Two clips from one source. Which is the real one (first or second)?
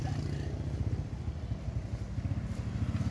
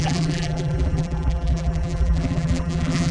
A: first